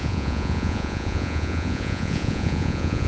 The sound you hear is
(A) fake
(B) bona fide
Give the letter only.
A